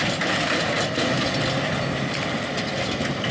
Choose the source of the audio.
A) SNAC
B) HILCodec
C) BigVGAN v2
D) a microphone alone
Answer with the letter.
D